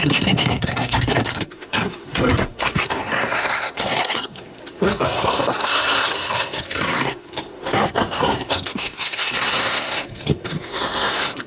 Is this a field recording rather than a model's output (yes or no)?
no